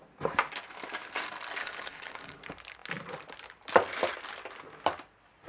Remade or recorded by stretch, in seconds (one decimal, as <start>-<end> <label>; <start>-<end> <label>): 0.0-1.6 recorded; 1.6-2.4 remade; 2.4-5.5 recorded